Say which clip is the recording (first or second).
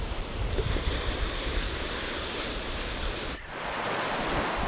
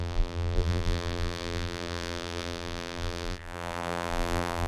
first